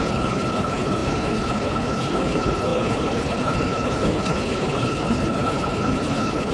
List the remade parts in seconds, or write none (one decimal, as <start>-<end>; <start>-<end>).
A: 0.0-6.5